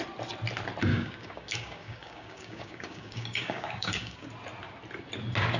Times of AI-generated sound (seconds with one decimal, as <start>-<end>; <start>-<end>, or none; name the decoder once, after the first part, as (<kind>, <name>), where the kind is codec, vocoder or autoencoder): 0.9-4.3 (codec, DAC)